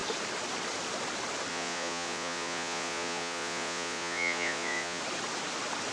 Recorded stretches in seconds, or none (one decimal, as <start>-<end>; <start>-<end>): 0.0-1.5; 5.0-5.9